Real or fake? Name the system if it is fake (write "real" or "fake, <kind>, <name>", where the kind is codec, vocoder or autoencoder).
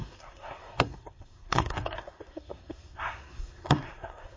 fake, codec, SNAC